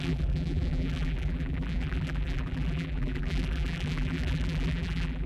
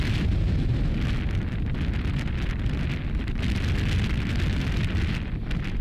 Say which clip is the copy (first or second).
first